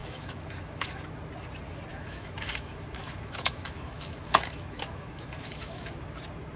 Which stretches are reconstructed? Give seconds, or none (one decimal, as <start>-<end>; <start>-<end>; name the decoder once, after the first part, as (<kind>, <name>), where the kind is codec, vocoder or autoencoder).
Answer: 0.0-1.0 (autoencoder, DAC-VAE); 1.9-5.9

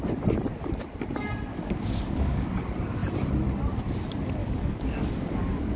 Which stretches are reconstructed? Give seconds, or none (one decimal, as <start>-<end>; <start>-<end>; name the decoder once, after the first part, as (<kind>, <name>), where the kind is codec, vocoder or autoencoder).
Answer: 1.5-2.5 (codec, DAC); 4.4-5.8